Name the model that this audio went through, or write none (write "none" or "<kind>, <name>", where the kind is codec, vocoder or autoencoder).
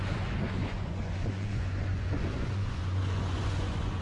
vocoder, Vocos